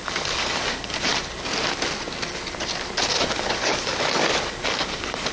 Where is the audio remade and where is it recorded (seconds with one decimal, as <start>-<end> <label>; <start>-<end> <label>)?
0.0-1.1 remade; 1.1-3.1 recorded; 3.1-5.3 remade